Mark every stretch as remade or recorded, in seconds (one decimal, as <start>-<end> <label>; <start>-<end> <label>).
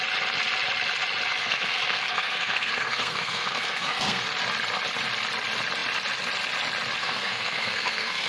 0.0-1.4 recorded; 1.4-4.2 remade; 4.2-7.0 recorded; 7.0-8.3 remade